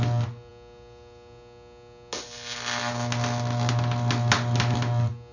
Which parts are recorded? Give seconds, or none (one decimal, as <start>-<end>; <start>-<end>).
0.0-5.3